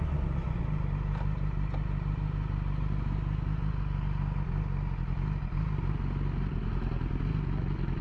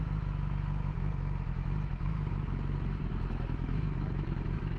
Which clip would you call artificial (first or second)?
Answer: second